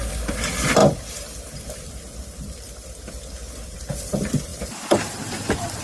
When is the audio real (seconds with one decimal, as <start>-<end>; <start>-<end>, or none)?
none